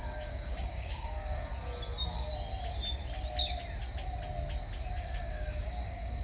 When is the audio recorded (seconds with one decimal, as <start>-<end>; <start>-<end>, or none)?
1.5-5.0